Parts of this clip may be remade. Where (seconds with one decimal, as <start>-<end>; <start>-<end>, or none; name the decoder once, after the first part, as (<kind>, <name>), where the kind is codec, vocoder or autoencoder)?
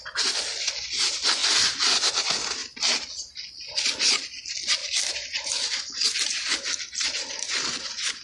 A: 2.6-3.1 (vocoder, BigVGAN v2); 4.8-7.5